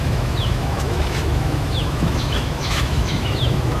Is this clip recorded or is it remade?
remade